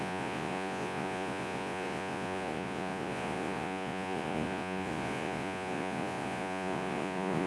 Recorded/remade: remade